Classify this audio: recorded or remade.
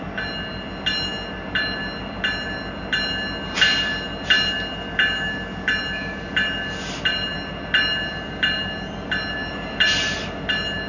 recorded